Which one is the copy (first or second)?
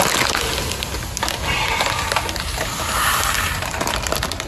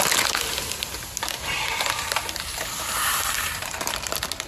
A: second